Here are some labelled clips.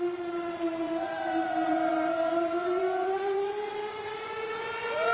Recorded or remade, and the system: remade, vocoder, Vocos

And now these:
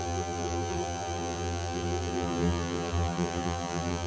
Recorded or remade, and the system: remade, vocoder, BigVGAN v2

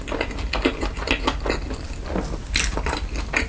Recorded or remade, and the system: recorded